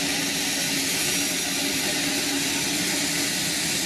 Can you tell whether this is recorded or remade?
recorded